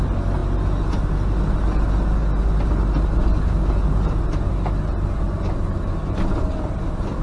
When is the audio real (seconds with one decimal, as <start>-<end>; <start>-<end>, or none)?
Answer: 0.0-7.2